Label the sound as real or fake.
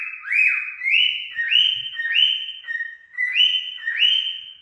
real